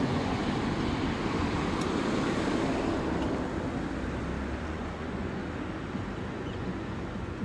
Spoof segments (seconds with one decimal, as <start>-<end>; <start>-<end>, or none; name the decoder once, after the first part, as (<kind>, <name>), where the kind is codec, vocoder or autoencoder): 0.0-0.4 (vocoder, Vocos); 4.6-5.4; 6.3-7.4